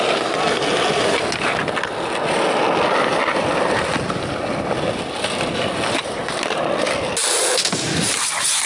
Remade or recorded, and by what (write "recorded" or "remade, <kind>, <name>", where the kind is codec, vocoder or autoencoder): recorded